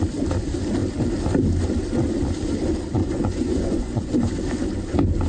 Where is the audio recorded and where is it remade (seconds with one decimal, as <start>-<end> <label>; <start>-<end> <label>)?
0.0-3.0 recorded; 3.0-4.1 remade; 4.1-5.3 recorded